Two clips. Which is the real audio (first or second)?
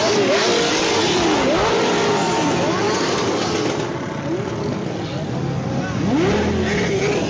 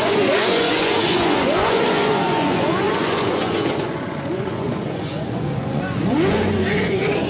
first